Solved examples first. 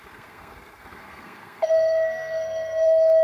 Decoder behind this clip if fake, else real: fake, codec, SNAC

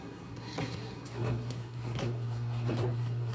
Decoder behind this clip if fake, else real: fake, codec, SNAC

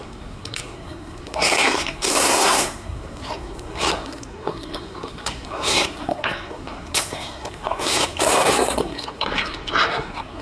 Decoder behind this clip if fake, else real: fake, codec, SNAC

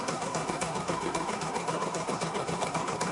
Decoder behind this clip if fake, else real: fake, codec, SNAC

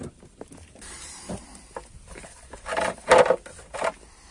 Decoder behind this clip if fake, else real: real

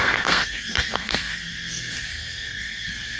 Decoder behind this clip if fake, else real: fake, codec, SNAC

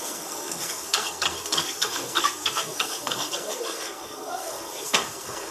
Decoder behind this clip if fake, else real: fake, codec, SNAC